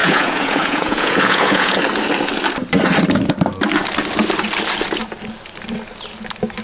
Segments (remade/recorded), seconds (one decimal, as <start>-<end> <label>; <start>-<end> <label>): 0.0-1.8 remade; 1.8-6.6 recorded